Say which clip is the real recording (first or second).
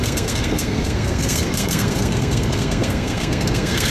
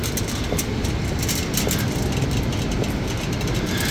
second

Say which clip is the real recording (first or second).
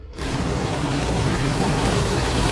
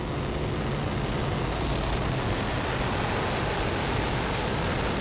second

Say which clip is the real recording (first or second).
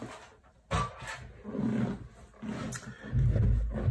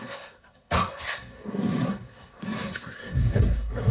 first